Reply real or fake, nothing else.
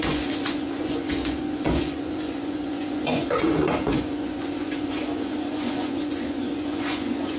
fake